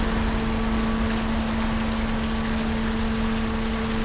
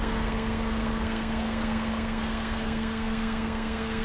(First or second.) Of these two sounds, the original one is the first